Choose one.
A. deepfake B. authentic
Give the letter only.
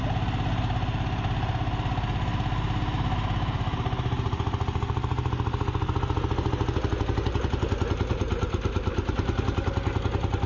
B